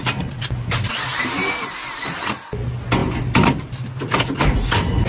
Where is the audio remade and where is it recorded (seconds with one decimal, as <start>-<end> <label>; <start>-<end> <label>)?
0.0-1.1 recorded; 1.1-2.1 remade; 2.1-5.1 recorded